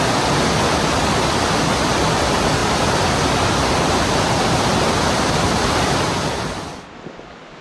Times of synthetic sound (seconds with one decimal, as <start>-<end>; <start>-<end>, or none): 2.6-3.2